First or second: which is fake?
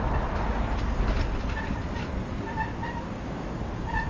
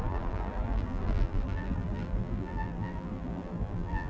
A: second